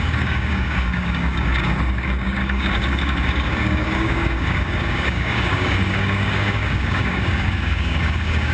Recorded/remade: remade